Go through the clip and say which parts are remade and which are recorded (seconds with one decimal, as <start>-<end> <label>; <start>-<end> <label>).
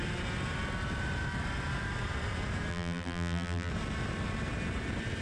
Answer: 0.0-2.7 recorded; 2.7-3.7 remade; 3.7-5.2 recorded